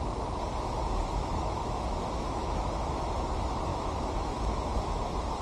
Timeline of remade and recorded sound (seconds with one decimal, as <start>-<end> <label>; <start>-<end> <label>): 0.0-1.2 recorded; 1.2-3.1 remade; 3.1-3.7 recorded; 3.7-4.6 remade; 4.6-5.4 recorded